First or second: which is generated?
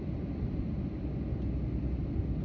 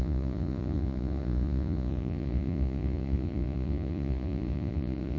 second